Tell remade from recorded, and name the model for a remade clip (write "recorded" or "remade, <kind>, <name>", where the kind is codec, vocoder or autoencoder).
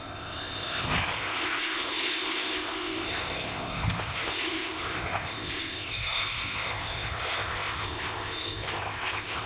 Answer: remade, codec, ZipCodec